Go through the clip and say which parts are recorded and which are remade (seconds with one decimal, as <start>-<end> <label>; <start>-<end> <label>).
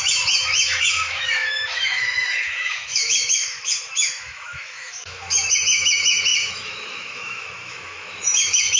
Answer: 0.0-8.8 remade